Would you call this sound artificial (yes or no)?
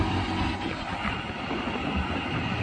no